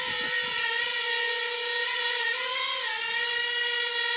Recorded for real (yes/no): yes